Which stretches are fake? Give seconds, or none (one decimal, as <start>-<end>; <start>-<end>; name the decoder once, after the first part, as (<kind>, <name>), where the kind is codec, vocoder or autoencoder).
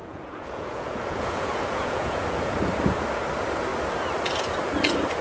0.0-2.6 (vocoder, Vocos)